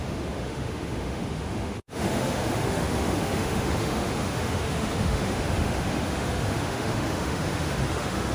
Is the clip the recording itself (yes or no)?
no